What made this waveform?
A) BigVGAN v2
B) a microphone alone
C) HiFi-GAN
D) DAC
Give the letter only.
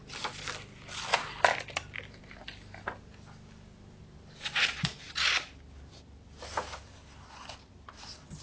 B